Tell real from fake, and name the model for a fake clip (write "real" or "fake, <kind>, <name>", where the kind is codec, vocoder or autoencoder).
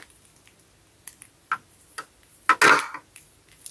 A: real